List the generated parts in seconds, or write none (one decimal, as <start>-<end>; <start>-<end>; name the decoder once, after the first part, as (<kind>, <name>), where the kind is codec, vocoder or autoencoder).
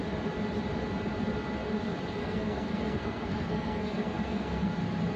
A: 2.2-4.7 (codec, SNAC)